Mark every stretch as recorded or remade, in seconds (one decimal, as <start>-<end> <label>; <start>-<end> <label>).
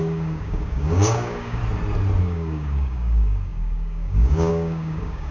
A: 0.0-1.6 remade; 1.6-2.2 recorded; 2.2-5.3 remade